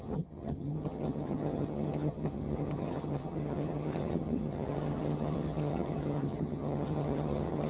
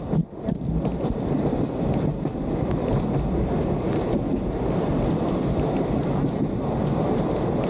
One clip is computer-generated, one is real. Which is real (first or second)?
second